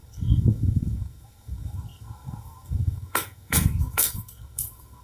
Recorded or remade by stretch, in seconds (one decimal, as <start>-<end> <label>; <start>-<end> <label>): 0.0-5.0 remade